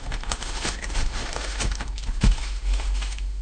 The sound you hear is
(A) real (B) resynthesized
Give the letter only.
B